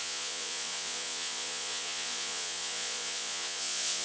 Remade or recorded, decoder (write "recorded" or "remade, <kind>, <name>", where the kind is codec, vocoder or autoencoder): remade, vocoder, Vocos